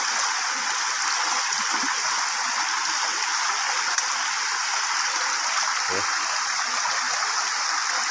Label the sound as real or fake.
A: real